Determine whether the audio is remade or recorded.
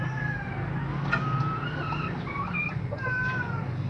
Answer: recorded